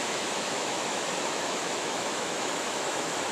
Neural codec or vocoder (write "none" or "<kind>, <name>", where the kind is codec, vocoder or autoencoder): autoencoder, DAC-VAE